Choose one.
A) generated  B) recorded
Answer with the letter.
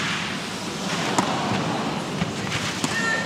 B